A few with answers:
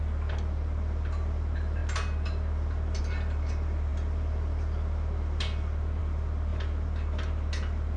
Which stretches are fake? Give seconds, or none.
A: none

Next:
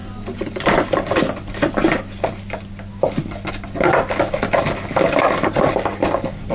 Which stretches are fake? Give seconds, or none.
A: none

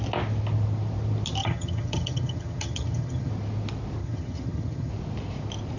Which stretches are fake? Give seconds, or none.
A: 1.4-3.3 (vocoder, HiFi-GAN); 4.0-4.9

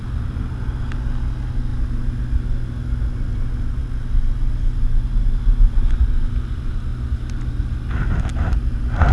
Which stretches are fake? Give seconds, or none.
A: none

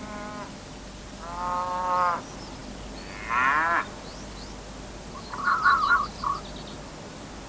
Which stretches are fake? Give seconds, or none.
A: none